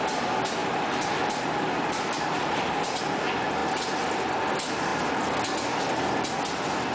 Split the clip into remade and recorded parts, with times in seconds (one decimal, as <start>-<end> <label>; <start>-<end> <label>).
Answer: 0.0-0.6 recorded; 0.6-3.0 remade; 3.0-6.9 recorded

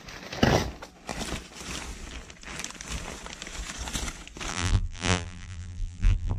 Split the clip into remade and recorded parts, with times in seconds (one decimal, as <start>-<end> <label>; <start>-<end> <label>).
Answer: 0.0-4.5 recorded; 4.5-6.4 remade

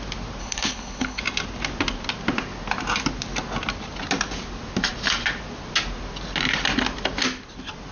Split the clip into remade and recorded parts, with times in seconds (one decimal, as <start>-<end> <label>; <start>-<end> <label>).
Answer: 0.0-0.4 recorded; 0.4-1.2 remade; 1.2-7.9 recorded

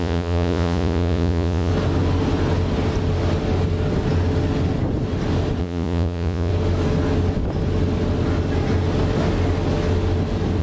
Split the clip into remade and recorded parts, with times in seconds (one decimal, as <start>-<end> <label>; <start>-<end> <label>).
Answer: 0.0-1.7 remade; 1.7-5.6 recorded; 5.6-6.5 remade; 6.5-10.6 recorded

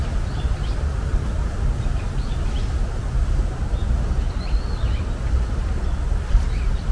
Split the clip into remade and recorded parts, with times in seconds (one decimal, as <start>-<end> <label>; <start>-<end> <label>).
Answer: 0.0-6.9 recorded